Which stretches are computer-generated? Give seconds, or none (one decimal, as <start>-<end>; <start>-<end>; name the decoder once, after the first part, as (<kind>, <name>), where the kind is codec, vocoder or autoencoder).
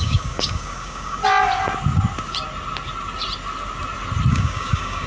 0.0-1.2 (codec, DAC); 4.3-5.1